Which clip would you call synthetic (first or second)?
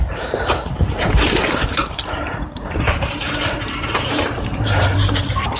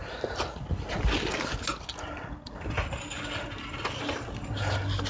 first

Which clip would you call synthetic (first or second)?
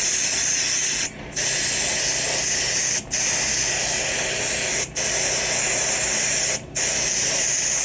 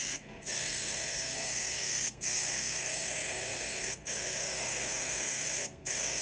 second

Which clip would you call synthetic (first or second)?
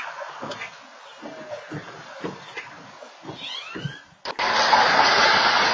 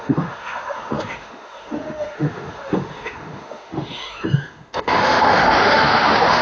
second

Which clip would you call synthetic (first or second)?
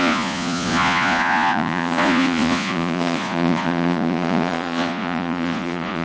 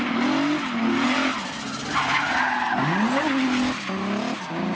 first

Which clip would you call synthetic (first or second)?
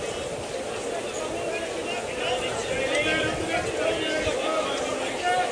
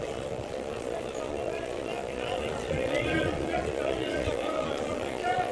second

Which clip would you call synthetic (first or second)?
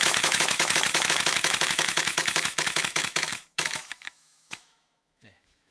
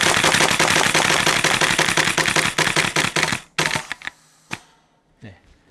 first